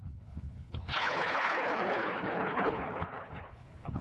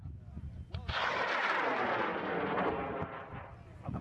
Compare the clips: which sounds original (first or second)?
second